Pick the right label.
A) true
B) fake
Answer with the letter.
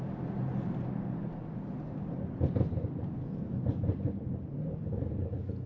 A